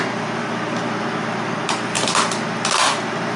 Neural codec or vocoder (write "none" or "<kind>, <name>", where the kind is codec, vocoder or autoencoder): none